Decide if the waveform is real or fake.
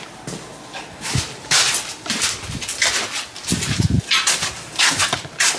real